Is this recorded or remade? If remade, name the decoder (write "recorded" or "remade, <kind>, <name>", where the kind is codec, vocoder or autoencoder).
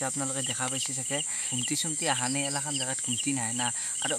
remade, autoencoder, DAC-VAE